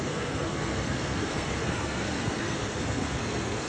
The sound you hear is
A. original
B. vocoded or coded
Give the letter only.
B